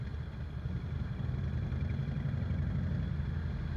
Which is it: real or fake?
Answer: real